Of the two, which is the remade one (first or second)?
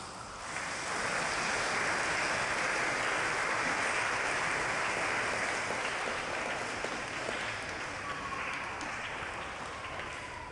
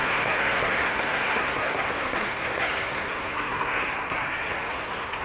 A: second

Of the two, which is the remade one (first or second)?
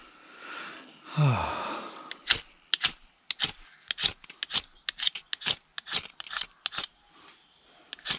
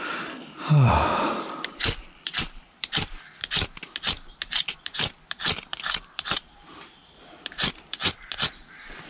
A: second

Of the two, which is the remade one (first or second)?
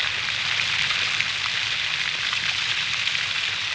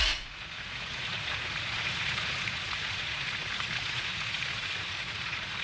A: second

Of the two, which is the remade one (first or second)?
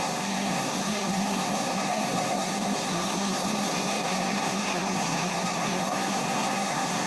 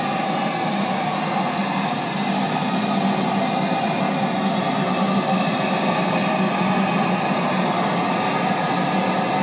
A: first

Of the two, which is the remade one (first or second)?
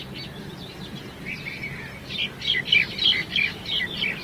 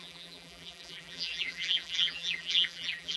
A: second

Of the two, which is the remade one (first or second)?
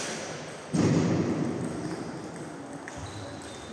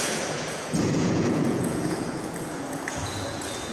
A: second